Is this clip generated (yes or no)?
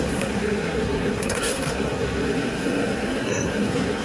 yes